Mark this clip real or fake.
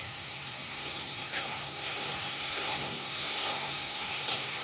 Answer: fake